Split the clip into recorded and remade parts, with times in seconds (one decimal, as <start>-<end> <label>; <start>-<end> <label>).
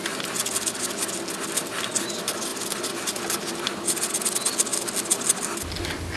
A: 0.0-6.2 recorded